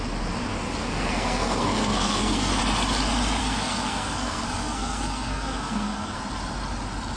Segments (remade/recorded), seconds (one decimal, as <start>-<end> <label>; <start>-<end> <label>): 0.0-0.8 recorded; 0.8-2.6 remade; 2.6-3.4 recorded; 3.4-6.2 remade; 6.2-7.2 recorded